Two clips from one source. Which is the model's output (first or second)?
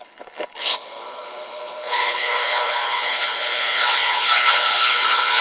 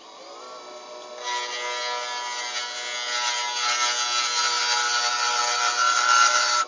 first